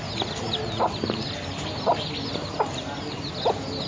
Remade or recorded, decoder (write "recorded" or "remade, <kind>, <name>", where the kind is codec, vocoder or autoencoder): recorded